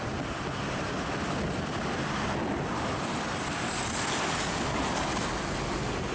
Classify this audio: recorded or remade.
recorded